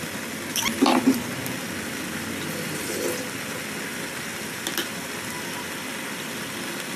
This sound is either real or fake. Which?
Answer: real